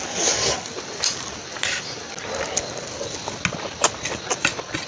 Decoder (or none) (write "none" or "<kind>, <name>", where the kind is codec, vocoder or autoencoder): none